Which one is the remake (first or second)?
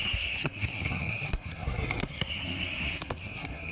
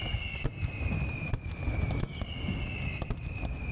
first